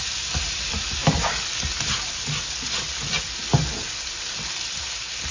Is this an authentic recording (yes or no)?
yes